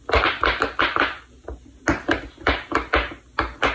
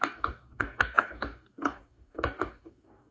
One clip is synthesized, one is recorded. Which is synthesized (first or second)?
second